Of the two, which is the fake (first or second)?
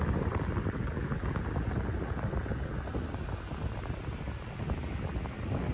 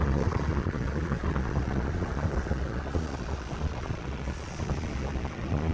second